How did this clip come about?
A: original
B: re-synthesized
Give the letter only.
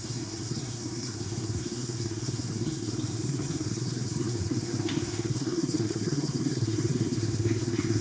B